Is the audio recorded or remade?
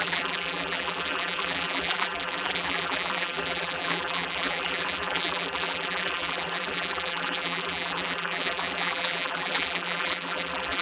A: remade